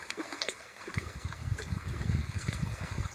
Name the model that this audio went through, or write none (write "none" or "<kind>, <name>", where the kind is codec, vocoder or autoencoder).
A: codec, SNAC